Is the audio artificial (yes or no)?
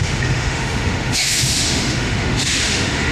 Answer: yes